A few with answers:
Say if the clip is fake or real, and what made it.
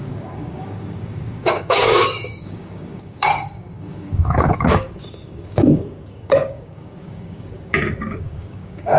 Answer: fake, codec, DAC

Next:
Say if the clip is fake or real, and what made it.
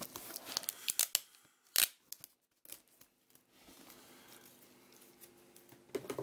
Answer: real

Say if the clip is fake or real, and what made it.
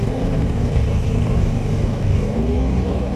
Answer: fake, codec, DAC